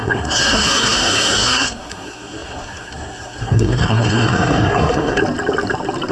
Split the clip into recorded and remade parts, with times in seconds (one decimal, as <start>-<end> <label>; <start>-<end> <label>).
0.0-5.2 remade; 5.2-6.1 recorded